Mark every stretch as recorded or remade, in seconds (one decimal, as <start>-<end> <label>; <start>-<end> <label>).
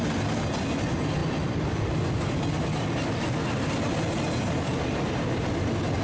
0.0-6.0 recorded